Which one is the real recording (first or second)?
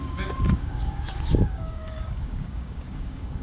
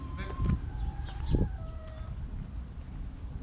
second